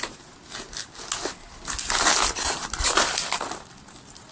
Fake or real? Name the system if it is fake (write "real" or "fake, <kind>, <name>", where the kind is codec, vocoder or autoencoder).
real